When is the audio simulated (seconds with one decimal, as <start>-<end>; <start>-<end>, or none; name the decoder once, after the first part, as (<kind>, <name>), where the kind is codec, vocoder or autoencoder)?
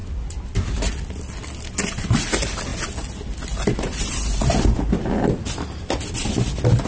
none